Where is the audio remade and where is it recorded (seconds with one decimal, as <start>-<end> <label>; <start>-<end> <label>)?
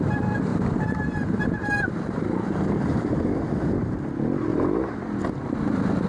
0.0-0.5 recorded; 0.5-4.0 remade; 4.0-4.5 recorded; 4.5-5.0 remade; 5.0-6.1 recorded